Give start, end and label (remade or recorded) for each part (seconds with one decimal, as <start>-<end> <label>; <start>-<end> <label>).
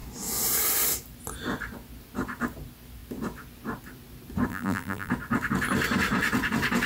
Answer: 0.0-4.5 recorded; 4.5-5.1 remade; 5.1-6.9 recorded